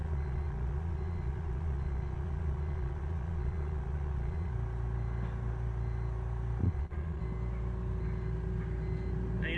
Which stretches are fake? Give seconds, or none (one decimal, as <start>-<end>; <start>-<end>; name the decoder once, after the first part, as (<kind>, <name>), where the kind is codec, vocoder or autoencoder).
0.0-4.5 (vocoder, Vocos); 6.6-7.2